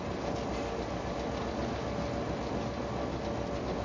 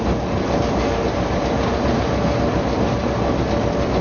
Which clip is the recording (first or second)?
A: first